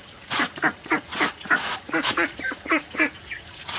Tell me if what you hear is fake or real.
fake